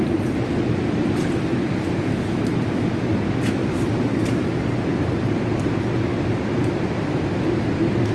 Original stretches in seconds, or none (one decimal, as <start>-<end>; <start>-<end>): 0.0-3.6; 7.1-8.1